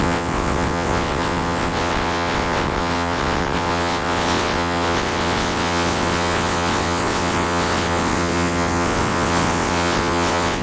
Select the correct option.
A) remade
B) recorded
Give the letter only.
A